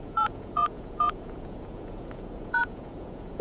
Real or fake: fake